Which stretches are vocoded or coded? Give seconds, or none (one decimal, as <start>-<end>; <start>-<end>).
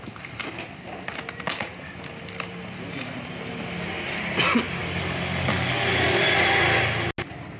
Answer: 4.8-6.3